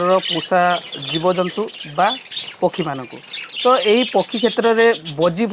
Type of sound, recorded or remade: recorded